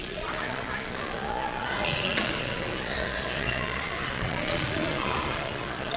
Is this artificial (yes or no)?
yes